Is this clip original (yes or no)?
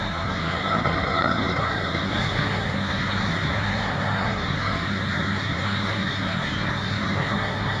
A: no